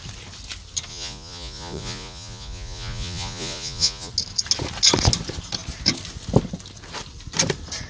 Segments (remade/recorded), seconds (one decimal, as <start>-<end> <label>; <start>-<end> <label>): 0.0-0.9 recorded; 0.9-4.1 remade; 4.1-7.9 recorded